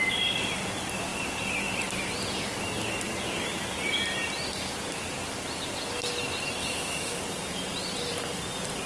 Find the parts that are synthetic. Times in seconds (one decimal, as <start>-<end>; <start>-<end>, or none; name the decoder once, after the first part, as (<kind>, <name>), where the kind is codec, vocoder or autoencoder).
6.6-7.2 (autoencoder, DAC-VAE)